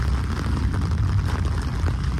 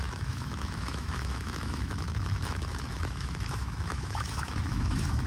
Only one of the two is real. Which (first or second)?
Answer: first